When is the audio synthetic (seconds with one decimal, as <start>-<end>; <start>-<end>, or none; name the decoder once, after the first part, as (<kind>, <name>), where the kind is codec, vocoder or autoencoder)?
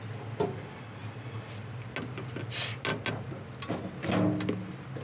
none